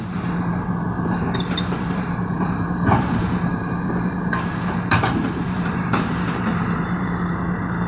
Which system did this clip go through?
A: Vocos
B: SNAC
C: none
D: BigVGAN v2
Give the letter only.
D